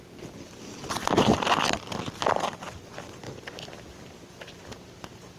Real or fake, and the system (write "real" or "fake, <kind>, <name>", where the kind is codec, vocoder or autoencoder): real